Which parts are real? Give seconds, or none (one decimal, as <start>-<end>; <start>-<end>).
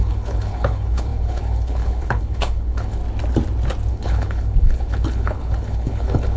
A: 3.0-3.9